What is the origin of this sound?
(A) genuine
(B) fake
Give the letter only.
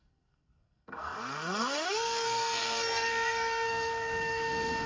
B